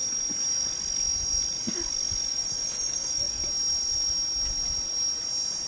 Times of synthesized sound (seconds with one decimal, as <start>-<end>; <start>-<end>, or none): 2.3-3.4